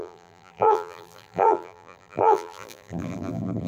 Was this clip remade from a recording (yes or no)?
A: yes